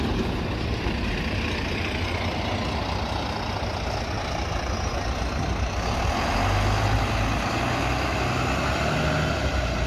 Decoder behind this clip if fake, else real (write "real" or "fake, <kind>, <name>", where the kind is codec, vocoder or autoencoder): real